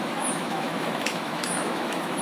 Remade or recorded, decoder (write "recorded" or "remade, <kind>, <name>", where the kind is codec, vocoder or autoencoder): remade, autoencoder, DAC-VAE